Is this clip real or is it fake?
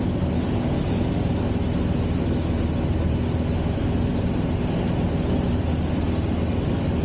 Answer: real